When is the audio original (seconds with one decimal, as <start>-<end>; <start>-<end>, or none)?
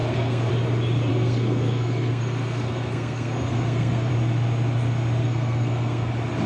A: 0.5-1.1; 4.1-5.2; 6.1-6.5